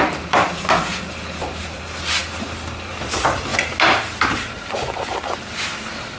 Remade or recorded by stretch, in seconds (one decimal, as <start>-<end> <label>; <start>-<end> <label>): 0.0-6.2 recorded